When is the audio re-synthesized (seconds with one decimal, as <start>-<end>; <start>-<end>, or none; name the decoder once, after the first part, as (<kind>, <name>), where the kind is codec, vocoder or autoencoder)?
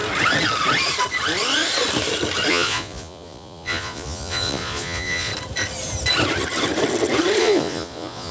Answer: 2.5-5.3 (vocoder, Vocos); 7.4-8.3